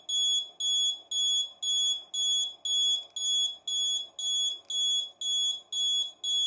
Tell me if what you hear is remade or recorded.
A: recorded